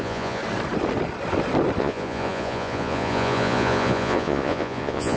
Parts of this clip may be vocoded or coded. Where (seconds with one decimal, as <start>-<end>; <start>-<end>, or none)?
0.0-0.4; 1.8-5.2